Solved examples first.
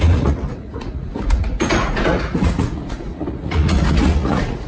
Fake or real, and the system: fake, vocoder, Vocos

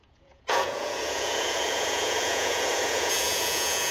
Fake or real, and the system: fake, vocoder, Vocos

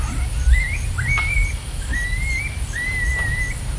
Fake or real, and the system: real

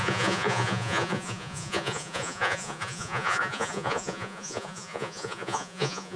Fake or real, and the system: fake, vocoder, Vocos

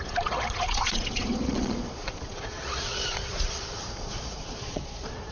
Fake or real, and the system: fake, vocoder, Vocos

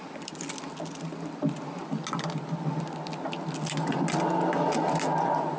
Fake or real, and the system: real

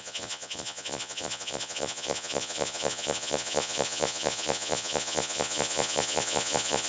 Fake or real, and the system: fake, vocoder, Vocos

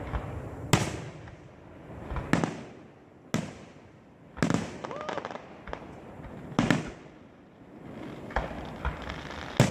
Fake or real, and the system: real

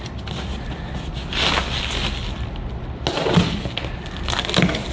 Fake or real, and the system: real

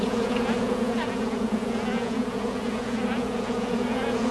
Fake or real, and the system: fake, vocoder, Vocos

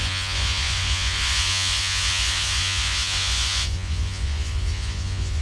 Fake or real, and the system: fake, vocoder, Vocos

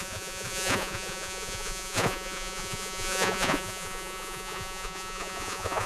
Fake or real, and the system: fake, vocoder, Vocos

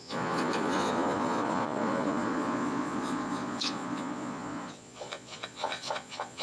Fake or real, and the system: fake, vocoder, Vocos